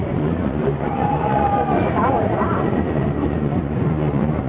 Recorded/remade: remade